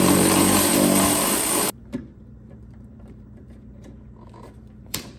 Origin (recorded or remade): remade